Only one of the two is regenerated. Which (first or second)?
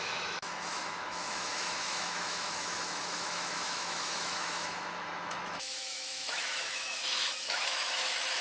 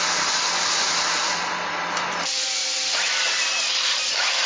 first